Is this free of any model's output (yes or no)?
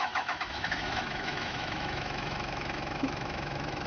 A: no